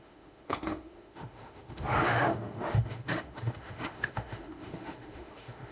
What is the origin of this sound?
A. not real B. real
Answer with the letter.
A